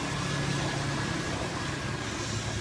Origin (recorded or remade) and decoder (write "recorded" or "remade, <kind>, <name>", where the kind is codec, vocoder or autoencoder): recorded